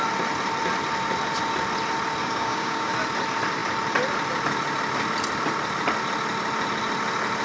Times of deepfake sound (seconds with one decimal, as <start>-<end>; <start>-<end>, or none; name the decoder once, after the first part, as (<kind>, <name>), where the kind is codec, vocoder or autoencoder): 2.2-2.9 (codec, DAC)